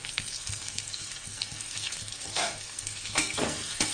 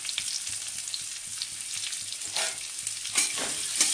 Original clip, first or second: second